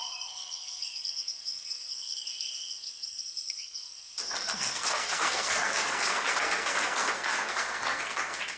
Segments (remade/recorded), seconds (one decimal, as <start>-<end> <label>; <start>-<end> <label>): 0.0-8.6 remade